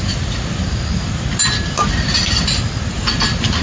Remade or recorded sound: recorded